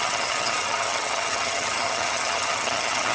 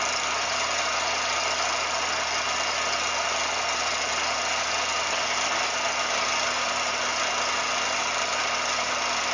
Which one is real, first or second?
second